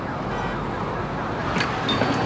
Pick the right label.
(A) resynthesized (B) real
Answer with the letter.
B